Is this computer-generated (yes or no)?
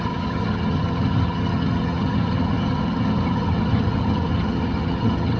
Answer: yes